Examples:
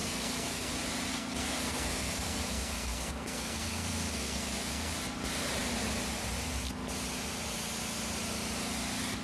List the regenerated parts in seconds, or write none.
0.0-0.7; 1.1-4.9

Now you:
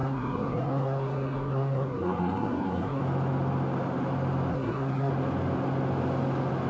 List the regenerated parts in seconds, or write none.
0.0-3.0; 4.5-5.1

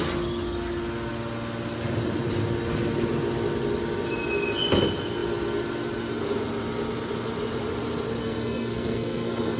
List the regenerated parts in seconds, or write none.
8.2-9.6